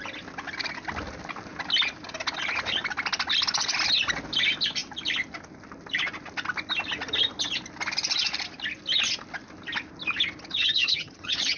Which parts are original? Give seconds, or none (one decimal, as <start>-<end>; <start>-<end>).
0.0-10.6